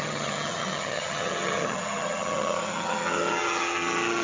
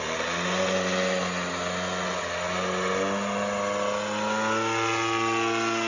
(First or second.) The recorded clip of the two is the second